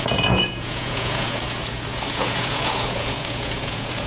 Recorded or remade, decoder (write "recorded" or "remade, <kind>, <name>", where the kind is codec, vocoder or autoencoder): remade, vocoder, Vocos